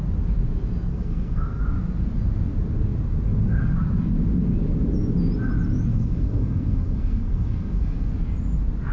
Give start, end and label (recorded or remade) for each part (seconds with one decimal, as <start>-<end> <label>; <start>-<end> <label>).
0.0-0.9 recorded; 0.9-1.6 remade; 1.6-5.9 recorded; 5.9-8.1 remade; 8.1-8.9 recorded